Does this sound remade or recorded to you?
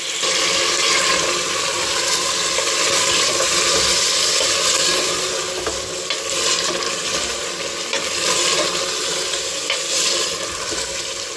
recorded